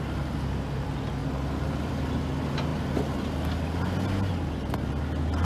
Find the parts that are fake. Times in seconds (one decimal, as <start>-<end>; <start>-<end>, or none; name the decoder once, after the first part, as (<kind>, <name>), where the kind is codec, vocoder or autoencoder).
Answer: none